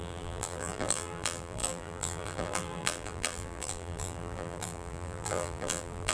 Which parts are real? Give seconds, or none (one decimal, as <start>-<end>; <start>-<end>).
none